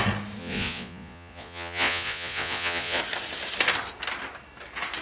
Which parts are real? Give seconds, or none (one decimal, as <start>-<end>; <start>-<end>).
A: 0.0-0.4; 3.0-5.0